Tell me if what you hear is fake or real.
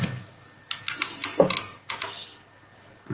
real